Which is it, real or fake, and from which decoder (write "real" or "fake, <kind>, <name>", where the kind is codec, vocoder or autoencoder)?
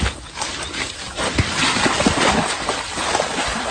real